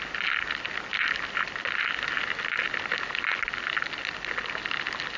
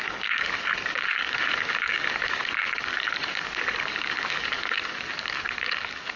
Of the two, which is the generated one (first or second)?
second